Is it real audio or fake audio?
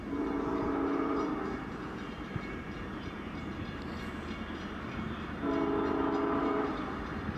fake